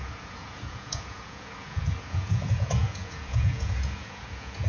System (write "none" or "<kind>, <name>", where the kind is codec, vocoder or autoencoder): vocoder, Vocos